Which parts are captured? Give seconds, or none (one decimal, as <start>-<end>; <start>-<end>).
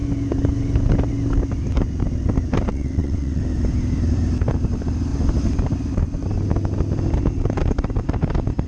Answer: 0.0-2.7; 3.4-8.7